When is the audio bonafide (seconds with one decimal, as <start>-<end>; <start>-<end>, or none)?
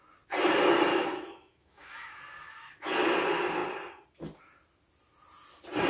0.0-0.9; 2.2-5.9